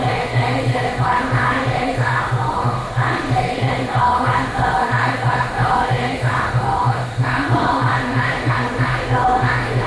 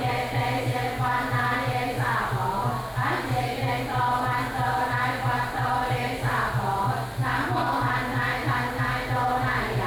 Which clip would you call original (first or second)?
second